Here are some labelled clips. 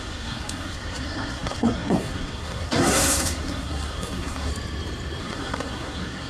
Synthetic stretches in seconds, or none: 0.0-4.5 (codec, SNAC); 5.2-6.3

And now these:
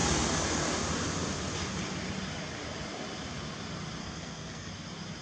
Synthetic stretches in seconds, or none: 4.0-4.7 (codec, SNAC)

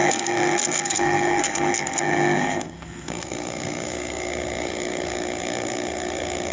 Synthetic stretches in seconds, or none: 0.0-6.5 (codec, SNAC)

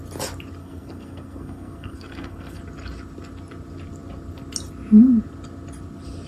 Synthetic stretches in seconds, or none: 0.6-2.6 (codec, SNAC)

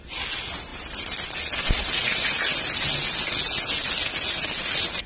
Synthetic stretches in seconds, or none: none

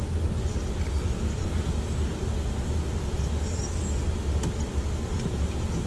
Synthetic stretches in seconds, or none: none